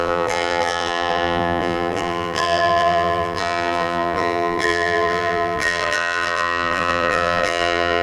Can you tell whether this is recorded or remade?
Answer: remade